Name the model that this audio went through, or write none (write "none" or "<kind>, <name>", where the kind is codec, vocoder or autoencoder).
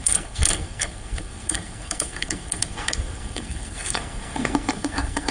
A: codec, SNAC